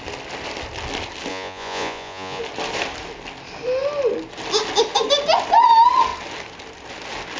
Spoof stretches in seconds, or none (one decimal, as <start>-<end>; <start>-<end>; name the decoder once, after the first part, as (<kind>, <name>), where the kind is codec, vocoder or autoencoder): 1.3-2.4 (vocoder, Vocos)